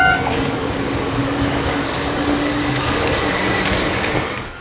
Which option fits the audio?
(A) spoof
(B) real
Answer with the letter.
A